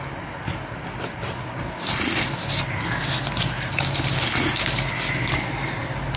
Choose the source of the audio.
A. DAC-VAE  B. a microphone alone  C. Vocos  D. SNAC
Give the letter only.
B